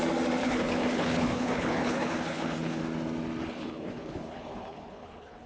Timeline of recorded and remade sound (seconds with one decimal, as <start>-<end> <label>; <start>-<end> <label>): 0.0-0.4 recorded; 0.4-2.8 remade; 2.8-3.4 recorded; 3.4-5.5 remade